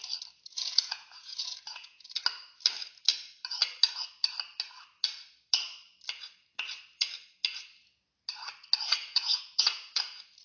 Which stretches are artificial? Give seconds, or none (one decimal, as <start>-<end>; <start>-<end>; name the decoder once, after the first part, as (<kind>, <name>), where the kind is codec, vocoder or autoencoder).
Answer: 0.5-2.2 (vocoder, Vocos); 9.0-10.0